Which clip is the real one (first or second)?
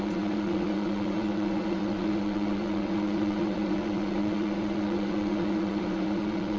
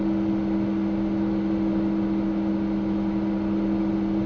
second